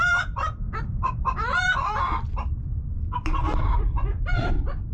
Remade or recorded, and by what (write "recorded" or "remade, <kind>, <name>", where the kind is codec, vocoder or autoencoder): remade, vocoder, BigVGAN v2